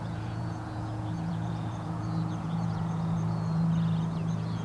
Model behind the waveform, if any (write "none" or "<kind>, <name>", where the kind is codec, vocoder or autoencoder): vocoder, Vocos